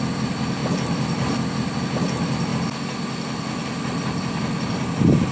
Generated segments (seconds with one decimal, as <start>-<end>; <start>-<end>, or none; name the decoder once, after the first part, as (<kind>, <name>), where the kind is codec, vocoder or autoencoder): none